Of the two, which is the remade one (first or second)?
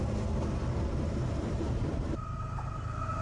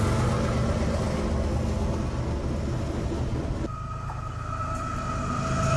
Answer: first